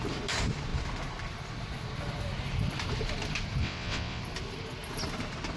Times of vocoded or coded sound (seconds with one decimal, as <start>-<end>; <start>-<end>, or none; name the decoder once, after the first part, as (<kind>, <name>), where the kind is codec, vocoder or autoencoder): 3.6-4.2 (vocoder, WaveNeXt)